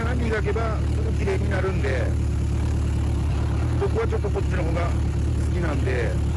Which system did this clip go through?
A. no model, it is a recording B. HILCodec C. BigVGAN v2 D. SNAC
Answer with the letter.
A